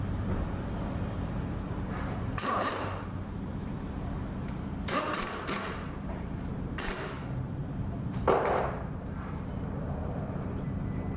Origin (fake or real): fake